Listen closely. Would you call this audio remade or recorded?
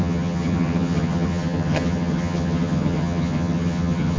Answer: remade